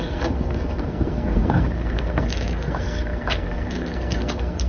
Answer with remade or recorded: remade